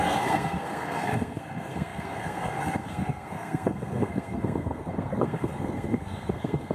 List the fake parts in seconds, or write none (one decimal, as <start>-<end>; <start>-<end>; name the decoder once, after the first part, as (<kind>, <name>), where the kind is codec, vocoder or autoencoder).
0.0-6.7 (codec, SNAC)